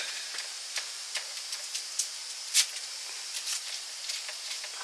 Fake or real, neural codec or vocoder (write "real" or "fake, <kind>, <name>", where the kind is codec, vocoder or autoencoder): real